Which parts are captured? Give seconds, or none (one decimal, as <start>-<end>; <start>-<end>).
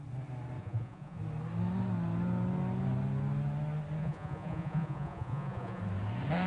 0.0-0.6; 1.2-4.0; 5.8-6.5